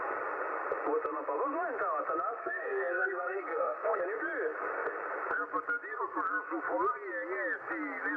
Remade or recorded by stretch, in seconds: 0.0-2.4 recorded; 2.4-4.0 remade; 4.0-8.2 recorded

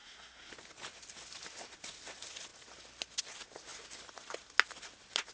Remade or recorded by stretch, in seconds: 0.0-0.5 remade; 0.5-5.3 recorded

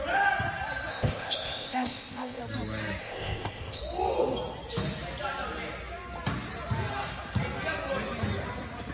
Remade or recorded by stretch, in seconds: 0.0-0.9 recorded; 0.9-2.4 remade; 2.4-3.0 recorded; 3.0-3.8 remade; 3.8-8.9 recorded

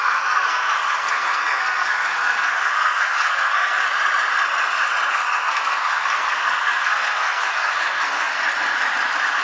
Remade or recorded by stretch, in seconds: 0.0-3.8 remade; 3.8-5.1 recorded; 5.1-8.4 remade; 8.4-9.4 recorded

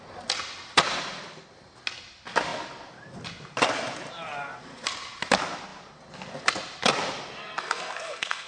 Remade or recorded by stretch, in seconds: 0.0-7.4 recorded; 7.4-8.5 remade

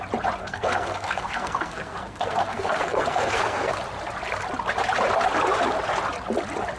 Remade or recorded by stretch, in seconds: 0.0-0.4 recorded; 0.4-3.8 remade; 3.8-6.8 recorded